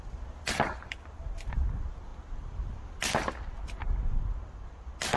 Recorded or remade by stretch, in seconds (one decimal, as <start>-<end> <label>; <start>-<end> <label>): 0.0-5.2 recorded